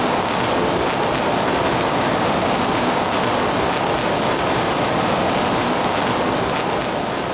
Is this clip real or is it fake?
real